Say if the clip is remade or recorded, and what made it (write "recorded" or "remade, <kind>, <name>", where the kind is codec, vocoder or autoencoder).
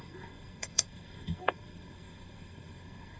remade, codec, SNAC